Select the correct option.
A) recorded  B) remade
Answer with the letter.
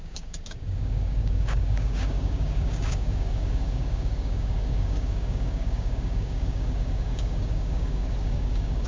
B